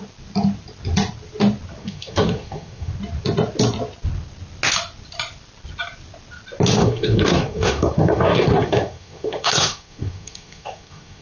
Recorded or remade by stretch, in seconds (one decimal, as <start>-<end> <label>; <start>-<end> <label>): 0.0-1.8 recorded; 1.8-2.9 remade; 2.9-6.8 recorded; 6.8-11.2 remade